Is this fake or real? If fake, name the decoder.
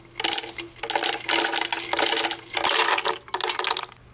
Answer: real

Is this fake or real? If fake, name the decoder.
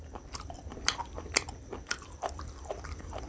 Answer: real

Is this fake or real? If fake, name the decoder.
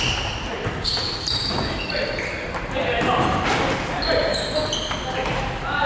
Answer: real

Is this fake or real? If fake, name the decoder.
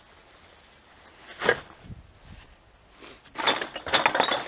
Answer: real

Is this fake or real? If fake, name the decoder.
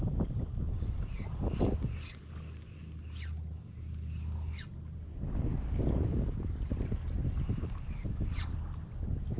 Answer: real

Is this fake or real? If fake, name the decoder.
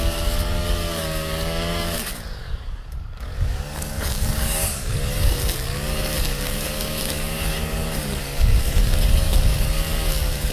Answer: fake, codec, DAC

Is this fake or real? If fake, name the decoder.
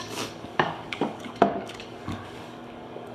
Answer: fake, codec, DAC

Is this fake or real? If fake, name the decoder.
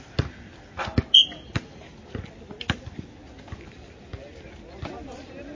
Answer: real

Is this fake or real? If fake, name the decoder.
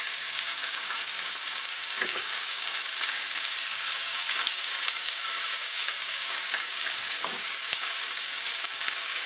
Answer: fake, codec, DAC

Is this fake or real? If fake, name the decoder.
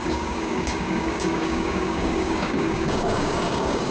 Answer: fake, codec, DAC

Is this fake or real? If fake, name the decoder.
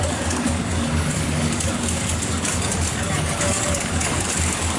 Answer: fake, codec, DAC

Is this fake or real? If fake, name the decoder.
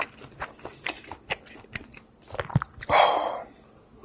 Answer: real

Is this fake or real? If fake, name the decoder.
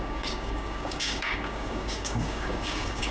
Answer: fake, codec, DAC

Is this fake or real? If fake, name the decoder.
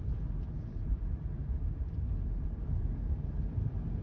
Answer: real